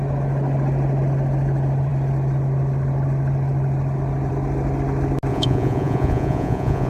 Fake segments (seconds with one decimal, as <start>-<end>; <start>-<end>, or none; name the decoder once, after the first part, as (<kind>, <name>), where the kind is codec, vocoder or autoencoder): 5.3-6.9 (vocoder, Vocos)